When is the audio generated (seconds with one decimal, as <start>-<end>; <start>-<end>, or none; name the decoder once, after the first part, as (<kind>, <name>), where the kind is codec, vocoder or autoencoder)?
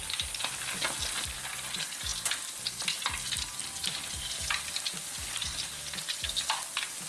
none